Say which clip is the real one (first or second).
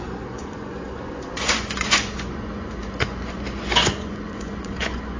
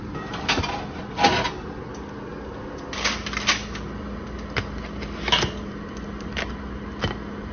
second